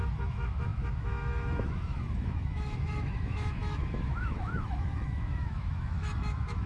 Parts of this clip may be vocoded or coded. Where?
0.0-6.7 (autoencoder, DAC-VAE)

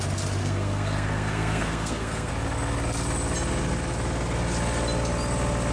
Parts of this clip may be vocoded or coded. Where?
0.4-2.3 (codec, SNAC)

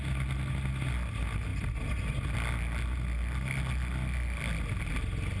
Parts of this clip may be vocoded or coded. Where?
none

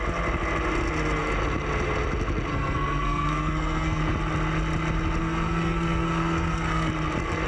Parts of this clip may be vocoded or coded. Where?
2.5-4.0 (codec, SNAC); 5.2-6.9